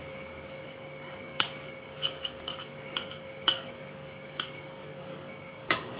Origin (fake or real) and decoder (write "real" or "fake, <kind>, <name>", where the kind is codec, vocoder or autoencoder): fake, codec, DAC